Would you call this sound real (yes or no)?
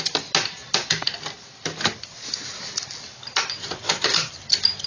yes